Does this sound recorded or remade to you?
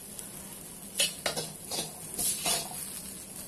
recorded